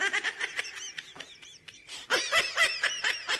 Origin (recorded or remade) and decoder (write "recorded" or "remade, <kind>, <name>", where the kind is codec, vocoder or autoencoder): recorded